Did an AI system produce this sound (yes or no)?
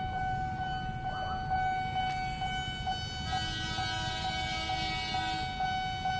no